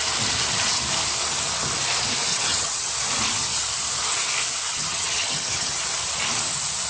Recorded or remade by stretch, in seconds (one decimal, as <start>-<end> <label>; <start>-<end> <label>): 0.0-2.3 recorded; 2.3-2.9 remade; 2.9-4.7 recorded; 4.7-5.8 remade; 5.8-6.9 recorded